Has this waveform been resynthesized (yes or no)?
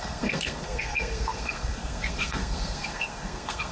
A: yes